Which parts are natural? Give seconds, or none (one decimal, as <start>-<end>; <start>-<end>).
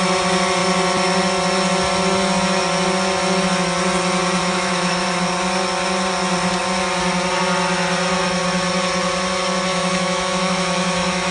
0.0-4.4; 5.2-9.7